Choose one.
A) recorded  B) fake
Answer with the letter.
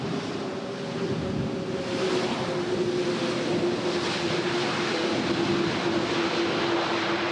A